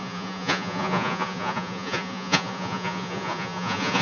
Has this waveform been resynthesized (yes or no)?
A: yes